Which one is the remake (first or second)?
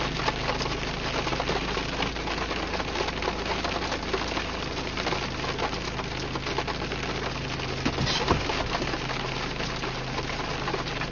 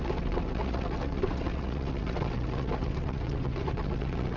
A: second